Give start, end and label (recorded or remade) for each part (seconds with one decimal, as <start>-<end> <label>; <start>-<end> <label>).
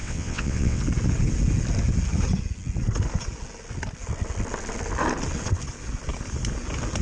0.0-0.8 remade; 0.8-7.0 recorded